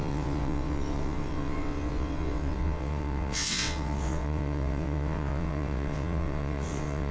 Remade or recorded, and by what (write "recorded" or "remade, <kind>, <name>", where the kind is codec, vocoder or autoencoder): remade, vocoder, WaveNeXt